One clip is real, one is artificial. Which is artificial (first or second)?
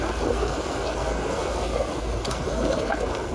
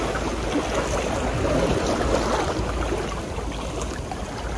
first